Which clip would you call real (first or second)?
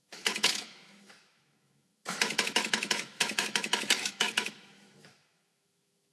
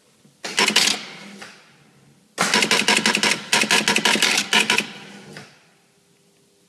second